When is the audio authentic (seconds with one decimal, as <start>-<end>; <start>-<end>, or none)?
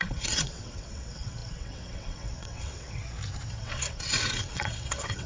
3.0-3.5